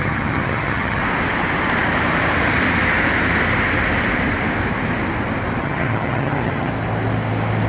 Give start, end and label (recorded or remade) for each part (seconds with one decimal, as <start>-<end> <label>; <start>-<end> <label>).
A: 0.0-1.0 remade; 1.0-5.6 recorded; 5.6-6.7 remade; 6.7-7.7 recorded